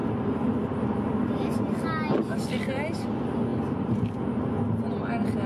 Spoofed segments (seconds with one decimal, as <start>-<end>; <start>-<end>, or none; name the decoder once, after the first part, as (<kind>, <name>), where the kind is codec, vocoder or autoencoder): 0.0-0.7 (vocoder, BigVGAN v2); 3.5-4.2